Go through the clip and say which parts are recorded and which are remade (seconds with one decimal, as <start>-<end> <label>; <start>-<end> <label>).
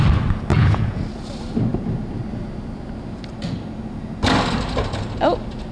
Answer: 0.0-0.5 recorded; 0.5-1.0 remade; 1.0-5.7 recorded